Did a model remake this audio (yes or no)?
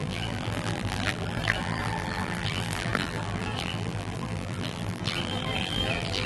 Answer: yes